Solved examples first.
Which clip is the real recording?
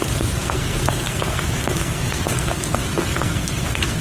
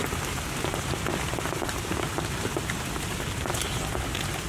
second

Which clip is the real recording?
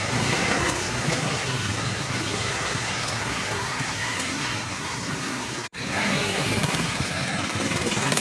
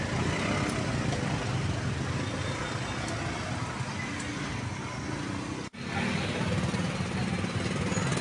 second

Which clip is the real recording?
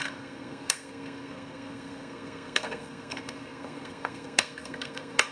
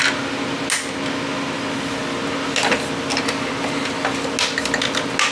second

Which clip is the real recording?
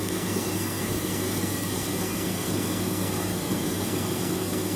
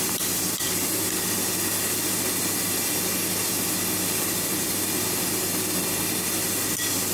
second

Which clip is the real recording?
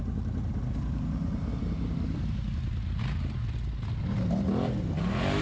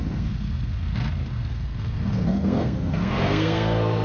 first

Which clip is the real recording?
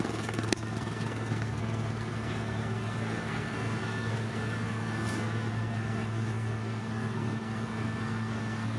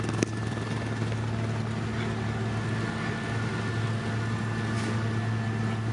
second